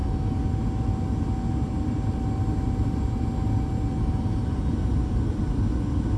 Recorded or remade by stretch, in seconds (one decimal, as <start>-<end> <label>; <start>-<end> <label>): 0.0-6.2 recorded